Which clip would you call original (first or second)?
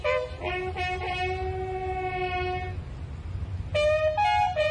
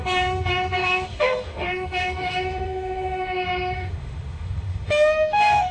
first